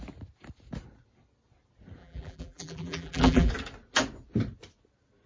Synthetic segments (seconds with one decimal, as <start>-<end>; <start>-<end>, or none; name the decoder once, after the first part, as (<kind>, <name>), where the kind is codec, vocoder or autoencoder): 2.0-3.5 (vocoder, BigVGAN v2)